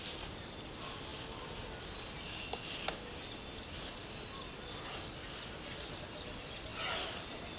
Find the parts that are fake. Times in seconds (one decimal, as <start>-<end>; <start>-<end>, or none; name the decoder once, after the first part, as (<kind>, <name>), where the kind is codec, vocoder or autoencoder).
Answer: none